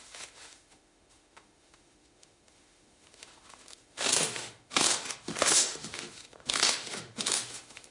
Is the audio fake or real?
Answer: fake